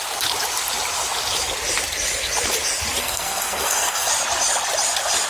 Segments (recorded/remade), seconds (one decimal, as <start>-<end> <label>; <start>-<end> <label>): 0.0-3.0 recorded; 3.0-4.1 remade; 4.1-5.3 recorded

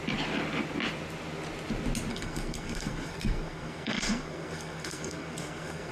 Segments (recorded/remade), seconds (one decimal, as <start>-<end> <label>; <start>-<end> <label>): 0.0-2.1 recorded; 2.1-5.9 remade

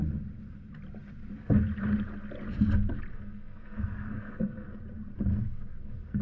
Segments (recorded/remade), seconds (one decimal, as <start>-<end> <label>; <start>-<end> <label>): 0.0-3.1 recorded; 3.1-4.8 remade; 4.8-5.3 recorded; 5.3-6.2 remade

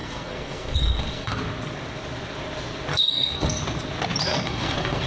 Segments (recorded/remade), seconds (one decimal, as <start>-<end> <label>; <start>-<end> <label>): 0.0-1.4 remade; 1.4-2.9 recorded; 2.9-3.6 remade; 3.6-4.3 recorded; 4.3-5.1 remade

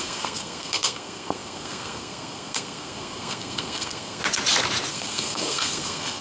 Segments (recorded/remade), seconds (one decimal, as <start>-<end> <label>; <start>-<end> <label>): 0.0-4.2 remade; 4.2-4.9 recorded; 4.9-6.2 remade

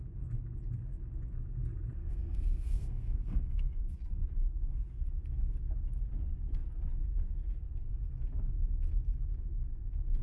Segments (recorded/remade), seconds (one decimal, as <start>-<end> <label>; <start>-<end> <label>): 0.0-2.0 recorded; 2.0-3.8 remade; 3.8-10.2 recorded

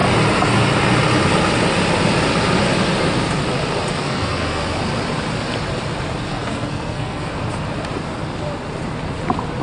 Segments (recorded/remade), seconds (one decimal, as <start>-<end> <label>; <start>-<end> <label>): 0.0-4.0 recorded; 4.0-4.6 remade; 4.6-6.3 recorded; 6.3-7.3 remade; 7.3-9.6 recorded

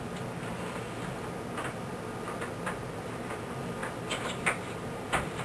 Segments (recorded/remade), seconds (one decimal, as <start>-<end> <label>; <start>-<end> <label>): 0.0-5.4 recorded